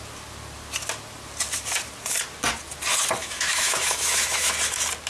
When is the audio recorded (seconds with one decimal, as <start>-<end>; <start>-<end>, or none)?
0.0-3.2; 4.5-5.1